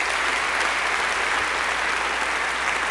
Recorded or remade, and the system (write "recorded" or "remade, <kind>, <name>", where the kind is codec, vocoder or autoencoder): recorded